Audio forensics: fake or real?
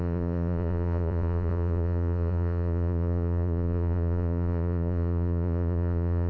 fake